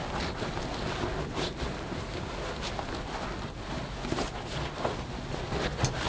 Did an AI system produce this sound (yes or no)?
no